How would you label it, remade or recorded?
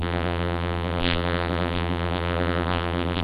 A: remade